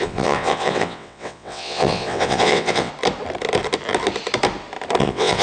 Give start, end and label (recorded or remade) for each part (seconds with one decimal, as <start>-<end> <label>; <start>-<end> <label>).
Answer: 0.0-2.9 remade; 2.9-5.0 recorded; 5.0-5.4 remade